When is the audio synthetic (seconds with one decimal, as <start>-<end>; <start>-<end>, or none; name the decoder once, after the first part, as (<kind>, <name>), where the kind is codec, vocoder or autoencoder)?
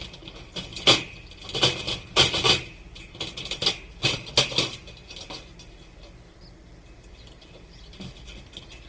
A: none